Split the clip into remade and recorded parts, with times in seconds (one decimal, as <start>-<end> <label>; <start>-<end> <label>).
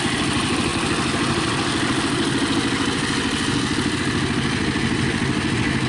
0.0-5.9 recorded